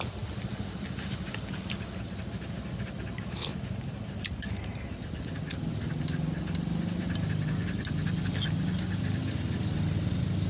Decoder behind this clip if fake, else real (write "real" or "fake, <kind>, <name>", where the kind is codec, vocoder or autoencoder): real